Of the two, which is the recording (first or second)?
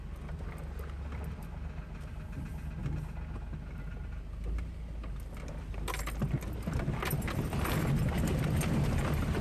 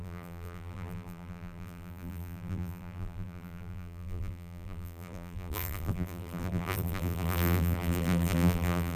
first